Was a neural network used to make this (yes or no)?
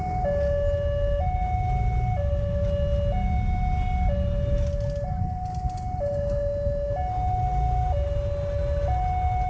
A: no